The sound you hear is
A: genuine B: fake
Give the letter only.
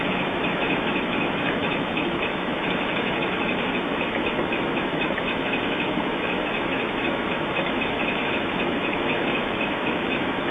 B